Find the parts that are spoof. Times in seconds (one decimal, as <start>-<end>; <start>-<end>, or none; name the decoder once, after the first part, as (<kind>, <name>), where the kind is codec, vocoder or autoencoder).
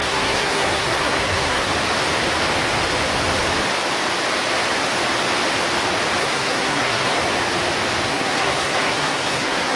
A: 0.0-1.7 (codec, SNAC); 6.2-7.2; 8.1-9.8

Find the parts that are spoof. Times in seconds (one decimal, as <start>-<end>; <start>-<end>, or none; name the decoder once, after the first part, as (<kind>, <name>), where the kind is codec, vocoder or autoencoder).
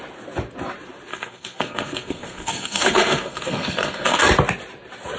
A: 1.1-4.2 (codec, SNAC)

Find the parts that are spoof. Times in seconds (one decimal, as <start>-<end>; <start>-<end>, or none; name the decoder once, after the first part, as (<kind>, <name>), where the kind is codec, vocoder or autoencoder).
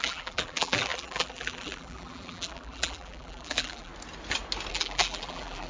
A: 0.0-3.9 (vocoder, BigVGAN v2); 4.7-5.7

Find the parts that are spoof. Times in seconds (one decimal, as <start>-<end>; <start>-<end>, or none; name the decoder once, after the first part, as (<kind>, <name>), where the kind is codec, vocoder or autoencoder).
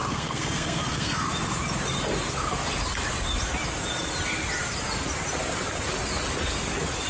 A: 0.0-1.3 (codec, SNAC)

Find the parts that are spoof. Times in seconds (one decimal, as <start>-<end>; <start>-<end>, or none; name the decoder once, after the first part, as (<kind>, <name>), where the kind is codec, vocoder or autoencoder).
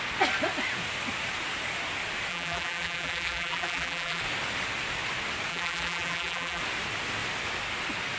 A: 2.3-4.2 (vocoder, BigVGAN v2); 5.5-6.6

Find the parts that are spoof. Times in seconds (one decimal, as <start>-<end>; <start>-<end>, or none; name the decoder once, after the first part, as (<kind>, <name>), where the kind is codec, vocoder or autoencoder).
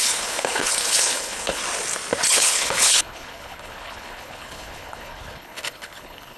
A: 0.0-1.6 (codec, HILCodec); 2.3-6.4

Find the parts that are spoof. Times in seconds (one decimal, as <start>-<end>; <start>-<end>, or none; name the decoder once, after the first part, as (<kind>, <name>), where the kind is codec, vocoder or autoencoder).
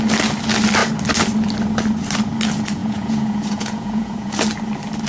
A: 2.8-4.4 (vocoder, Vocos)